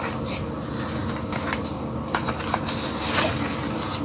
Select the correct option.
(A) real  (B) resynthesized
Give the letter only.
A